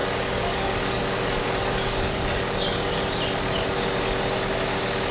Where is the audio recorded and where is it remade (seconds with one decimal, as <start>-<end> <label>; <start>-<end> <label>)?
0.0-3.0 remade; 3.0-5.1 recorded